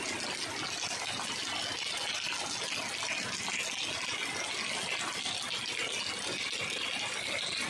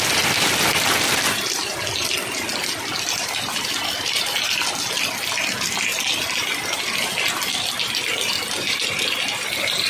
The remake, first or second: second